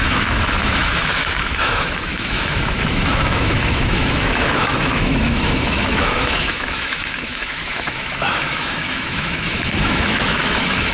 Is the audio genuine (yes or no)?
no